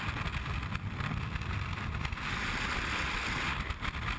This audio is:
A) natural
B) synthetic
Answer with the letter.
A